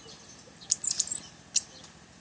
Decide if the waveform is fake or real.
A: real